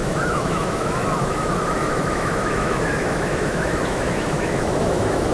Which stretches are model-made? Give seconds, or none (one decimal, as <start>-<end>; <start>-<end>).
0.0-5.3